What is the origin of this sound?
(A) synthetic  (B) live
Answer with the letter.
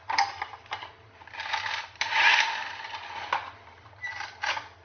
B